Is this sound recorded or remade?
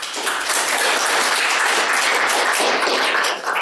recorded